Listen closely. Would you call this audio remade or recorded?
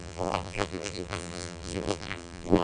remade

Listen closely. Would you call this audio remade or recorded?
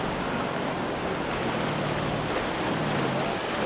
recorded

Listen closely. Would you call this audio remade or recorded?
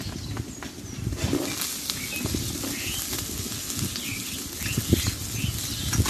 recorded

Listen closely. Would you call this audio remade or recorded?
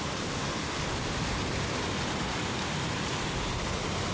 recorded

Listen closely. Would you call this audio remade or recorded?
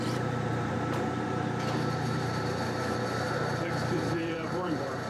remade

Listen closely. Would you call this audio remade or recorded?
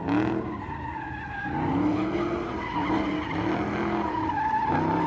recorded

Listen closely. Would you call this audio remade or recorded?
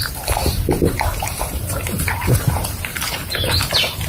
remade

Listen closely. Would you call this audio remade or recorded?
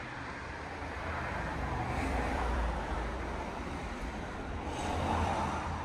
remade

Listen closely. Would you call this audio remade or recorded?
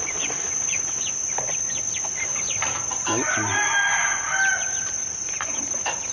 recorded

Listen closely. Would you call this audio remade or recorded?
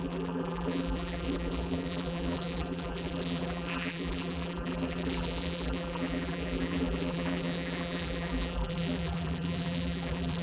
remade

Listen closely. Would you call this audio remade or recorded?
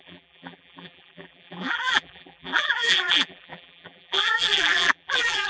remade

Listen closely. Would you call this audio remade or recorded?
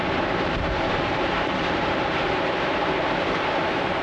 remade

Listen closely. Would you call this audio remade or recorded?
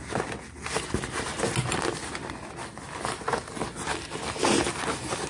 recorded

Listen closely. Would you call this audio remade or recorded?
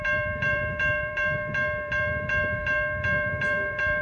remade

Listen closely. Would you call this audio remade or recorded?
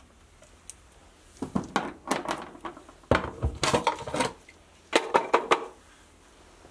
recorded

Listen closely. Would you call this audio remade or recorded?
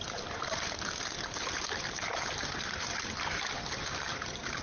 remade